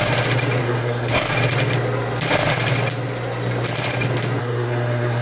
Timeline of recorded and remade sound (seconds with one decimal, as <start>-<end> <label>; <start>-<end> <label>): 0.0-0.6 recorded; 0.6-1.2 remade; 1.2-4.4 recorded; 4.4-5.2 remade

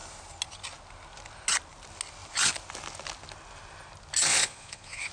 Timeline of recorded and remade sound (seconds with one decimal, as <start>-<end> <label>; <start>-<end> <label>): 0.0-4.3 recorded; 4.3-5.1 remade

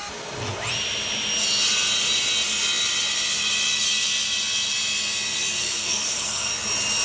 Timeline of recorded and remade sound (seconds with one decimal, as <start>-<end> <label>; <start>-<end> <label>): 0.0-5.6 recorded; 5.6-6.5 remade; 6.5-7.0 recorded

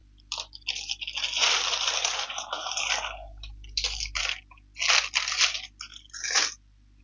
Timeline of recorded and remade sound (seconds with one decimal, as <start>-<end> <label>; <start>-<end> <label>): 0.0-4.2 remade; 4.2-5.9 recorded; 5.9-7.0 remade

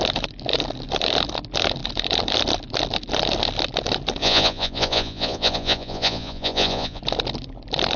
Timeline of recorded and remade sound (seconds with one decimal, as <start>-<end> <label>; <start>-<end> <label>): 0.0-4.2 recorded; 4.2-7.0 remade; 7.0-8.0 recorded

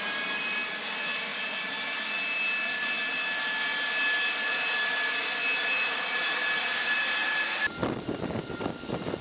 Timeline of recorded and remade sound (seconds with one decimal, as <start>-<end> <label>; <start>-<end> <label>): 0.0-9.2 recorded

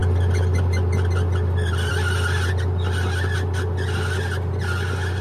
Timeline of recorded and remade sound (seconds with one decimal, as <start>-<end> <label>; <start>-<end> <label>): 0.0-5.2 recorded

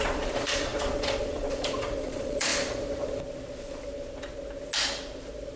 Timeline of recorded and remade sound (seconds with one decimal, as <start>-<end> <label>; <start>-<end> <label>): 0.0-2.5 remade; 2.5-5.6 recorded